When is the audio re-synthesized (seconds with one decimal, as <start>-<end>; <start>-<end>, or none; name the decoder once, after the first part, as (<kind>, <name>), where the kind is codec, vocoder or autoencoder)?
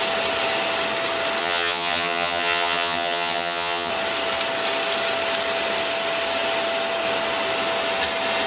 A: 1.4-3.9 (vocoder, HiFi-GAN)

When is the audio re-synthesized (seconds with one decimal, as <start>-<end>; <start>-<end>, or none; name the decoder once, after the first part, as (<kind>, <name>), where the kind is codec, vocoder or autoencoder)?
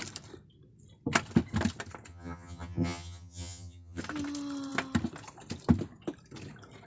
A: 2.1-4.0 (vocoder, HiFi-GAN)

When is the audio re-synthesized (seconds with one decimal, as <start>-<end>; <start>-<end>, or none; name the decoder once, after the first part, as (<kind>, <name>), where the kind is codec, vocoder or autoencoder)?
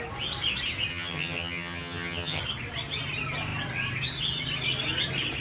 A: 0.9-2.4 (vocoder, HiFi-GAN)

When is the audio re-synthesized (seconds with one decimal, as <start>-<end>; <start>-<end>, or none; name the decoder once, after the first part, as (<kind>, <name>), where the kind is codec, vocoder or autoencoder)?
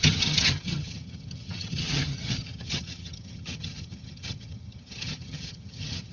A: 0.0-6.1 (vocoder, HiFi-GAN)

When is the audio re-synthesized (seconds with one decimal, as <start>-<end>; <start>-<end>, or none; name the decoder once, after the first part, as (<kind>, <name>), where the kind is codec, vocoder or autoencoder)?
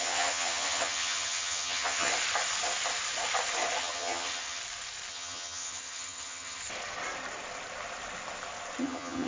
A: 0.0-2.1 (vocoder, HiFi-GAN); 3.8-4.6; 5.1-6.6; 8.8-9.3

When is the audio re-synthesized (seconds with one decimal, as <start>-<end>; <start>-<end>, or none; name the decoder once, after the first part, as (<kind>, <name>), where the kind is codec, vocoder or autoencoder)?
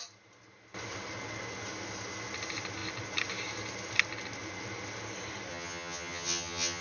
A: 5.5-6.8 (vocoder, HiFi-GAN)